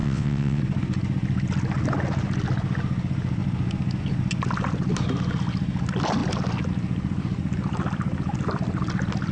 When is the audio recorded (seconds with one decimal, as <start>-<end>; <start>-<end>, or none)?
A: 0.6-9.3